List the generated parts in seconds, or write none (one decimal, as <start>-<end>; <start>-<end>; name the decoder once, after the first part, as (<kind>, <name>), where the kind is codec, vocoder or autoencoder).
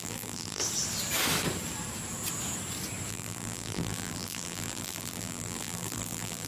0.0-0.6 (vocoder, BigVGAN v2); 3.1-6.5